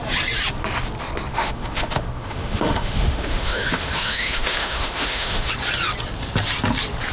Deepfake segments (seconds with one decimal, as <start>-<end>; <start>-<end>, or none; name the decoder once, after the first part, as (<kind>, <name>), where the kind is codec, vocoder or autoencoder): 1.3-5.5 (autoencoder, DAC-VAE)